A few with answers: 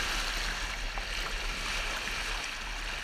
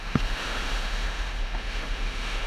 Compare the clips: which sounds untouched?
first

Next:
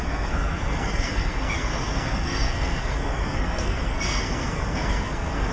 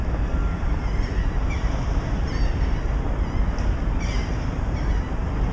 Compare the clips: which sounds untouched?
second